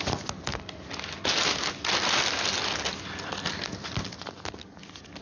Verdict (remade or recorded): recorded